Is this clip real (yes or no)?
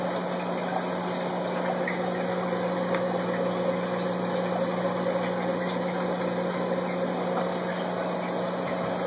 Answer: yes